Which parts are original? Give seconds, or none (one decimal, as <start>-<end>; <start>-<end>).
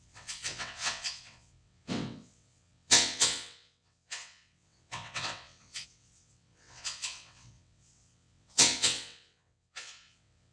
none